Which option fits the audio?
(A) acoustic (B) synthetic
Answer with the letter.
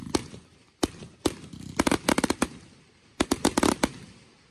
A